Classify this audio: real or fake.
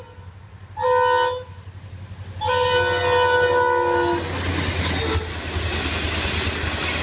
real